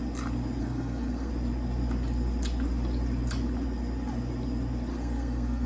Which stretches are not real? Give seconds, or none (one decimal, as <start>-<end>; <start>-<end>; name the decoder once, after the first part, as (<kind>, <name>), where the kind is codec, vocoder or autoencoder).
0.6-1.3 (codec, SNAC); 4.9-5.7